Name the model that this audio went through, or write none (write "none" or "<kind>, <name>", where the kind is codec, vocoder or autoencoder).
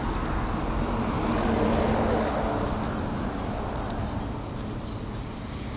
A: none